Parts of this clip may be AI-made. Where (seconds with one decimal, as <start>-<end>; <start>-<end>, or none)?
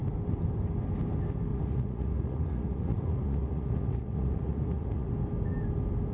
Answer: 1.5-5.1